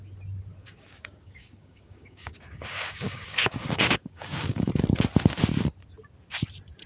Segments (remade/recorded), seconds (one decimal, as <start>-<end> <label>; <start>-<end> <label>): 0.0-0.6 recorded; 0.6-4.7 remade; 4.7-6.9 recorded